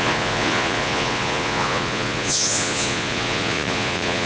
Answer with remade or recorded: remade